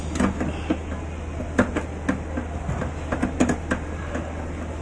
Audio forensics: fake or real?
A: real